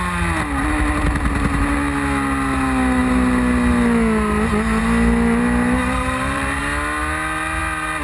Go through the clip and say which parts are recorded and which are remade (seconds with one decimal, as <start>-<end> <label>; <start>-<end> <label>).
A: 0.0-5.8 recorded; 5.8-6.6 remade; 6.6-8.0 recorded